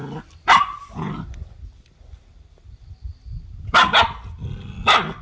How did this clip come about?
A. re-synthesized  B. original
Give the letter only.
B